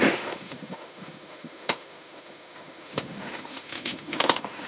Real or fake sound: fake